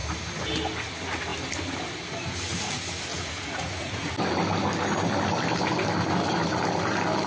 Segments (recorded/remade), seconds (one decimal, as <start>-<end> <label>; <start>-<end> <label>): 0.0-3.1 recorded; 3.1-4.1 remade; 4.1-7.3 recorded